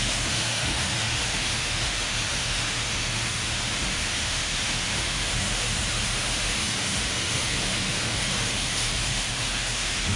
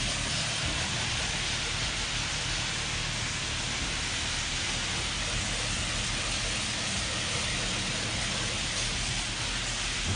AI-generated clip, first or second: first